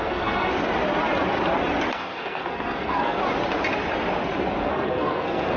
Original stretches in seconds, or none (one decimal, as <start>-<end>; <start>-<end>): 0.5-1.9; 3.2-4.6